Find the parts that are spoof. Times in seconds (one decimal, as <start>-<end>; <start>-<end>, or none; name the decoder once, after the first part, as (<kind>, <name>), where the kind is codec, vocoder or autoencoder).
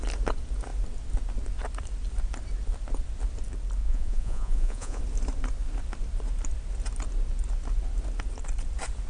3.8-5.0 (vocoder, Vocos)